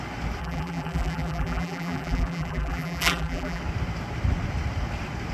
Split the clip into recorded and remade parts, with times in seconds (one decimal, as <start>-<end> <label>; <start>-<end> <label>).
0.0-0.4 recorded; 0.4-3.6 remade; 3.6-5.3 recorded